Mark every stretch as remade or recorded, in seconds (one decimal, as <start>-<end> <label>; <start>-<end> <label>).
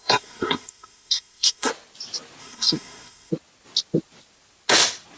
0.0-1.7 remade; 1.7-2.4 recorded; 2.4-3.3 remade; 3.3-5.2 recorded